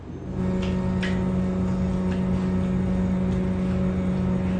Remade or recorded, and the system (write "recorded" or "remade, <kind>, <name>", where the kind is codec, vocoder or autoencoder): recorded